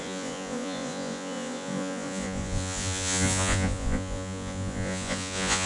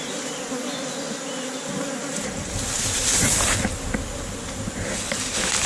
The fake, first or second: first